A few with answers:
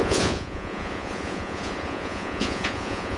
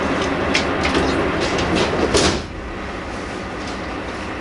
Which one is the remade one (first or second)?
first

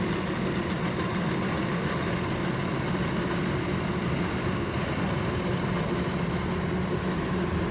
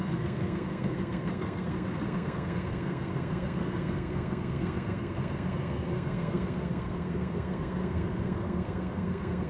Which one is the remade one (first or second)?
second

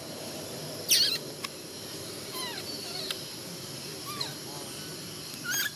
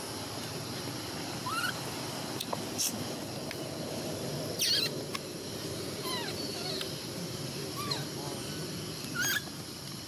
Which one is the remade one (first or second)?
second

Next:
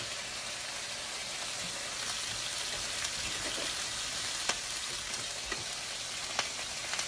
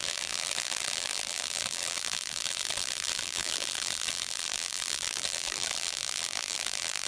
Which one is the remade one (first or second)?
second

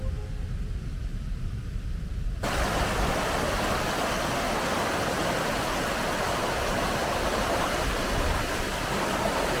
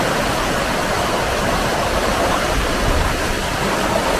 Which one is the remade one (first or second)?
second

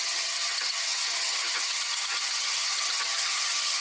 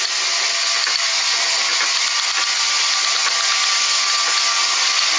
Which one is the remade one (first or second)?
first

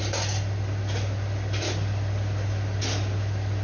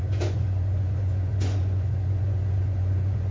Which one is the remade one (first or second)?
second